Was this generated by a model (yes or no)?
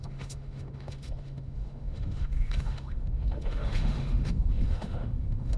yes